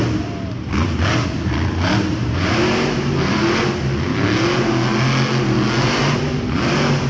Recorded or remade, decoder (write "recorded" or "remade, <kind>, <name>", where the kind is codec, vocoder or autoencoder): recorded